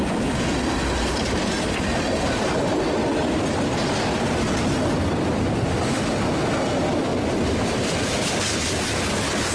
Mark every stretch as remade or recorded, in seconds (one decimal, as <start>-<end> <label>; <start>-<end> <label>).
0.0-9.5 recorded